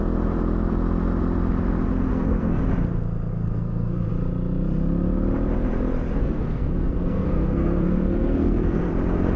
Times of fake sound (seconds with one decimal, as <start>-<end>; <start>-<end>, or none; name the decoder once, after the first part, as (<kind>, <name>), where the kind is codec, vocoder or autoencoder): 2.1-2.6 (codec, SNAC); 3.3-4.1; 6.2-8.9